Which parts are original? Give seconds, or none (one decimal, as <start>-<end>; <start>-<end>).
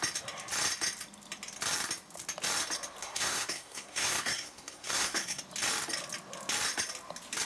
0.0-3.0; 5.4-7.4